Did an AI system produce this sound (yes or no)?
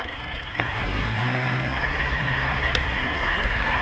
yes